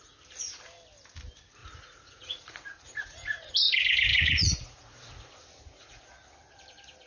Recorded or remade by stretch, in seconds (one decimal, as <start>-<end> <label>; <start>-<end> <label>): 0.0-1.6 recorded; 1.6-3.5 remade; 3.5-4.1 recorded; 4.1-6.0 remade; 6.0-7.1 recorded